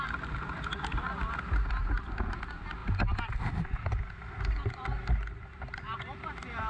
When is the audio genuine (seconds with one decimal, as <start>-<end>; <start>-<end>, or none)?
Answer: 0.0-6.7